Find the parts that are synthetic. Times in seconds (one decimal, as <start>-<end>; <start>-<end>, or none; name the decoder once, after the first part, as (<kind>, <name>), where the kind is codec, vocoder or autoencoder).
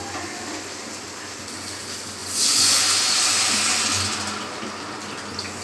2.2-2.8 (vocoder, Vocos)